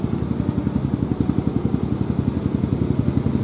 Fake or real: real